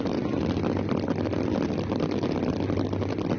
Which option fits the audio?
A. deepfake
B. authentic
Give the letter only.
B